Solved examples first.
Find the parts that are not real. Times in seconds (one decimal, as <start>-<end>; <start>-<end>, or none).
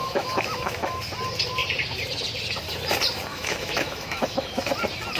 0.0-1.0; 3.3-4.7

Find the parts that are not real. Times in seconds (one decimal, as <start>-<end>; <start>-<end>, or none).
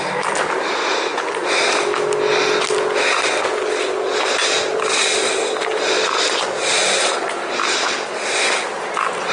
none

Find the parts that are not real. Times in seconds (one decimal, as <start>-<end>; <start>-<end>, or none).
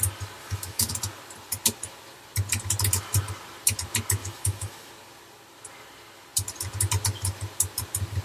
0.4-0.9; 4.2-4.9